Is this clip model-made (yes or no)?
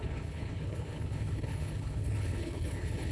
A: yes